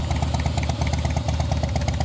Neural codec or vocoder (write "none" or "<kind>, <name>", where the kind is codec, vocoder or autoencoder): none